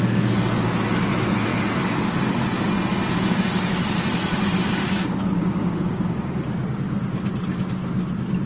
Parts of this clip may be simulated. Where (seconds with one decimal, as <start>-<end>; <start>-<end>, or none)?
4.5-6.1